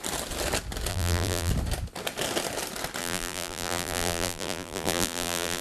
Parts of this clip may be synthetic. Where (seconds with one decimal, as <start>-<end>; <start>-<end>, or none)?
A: 0.9-1.5; 3.0-5.6